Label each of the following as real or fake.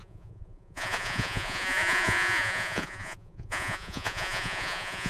fake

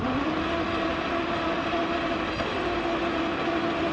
real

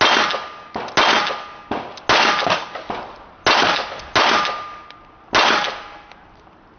real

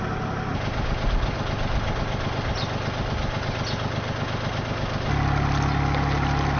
real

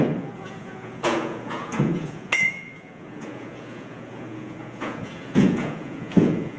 fake